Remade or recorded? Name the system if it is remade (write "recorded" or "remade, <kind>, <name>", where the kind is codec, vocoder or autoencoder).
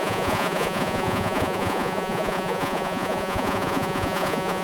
remade, vocoder, Vocos